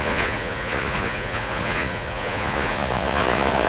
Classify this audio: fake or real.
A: fake